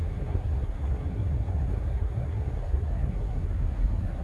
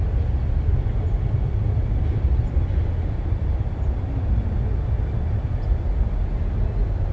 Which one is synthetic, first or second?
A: first